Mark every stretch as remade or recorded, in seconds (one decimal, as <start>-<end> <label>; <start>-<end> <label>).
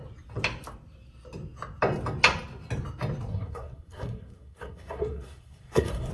0.0-3.3 recorded; 3.3-6.1 remade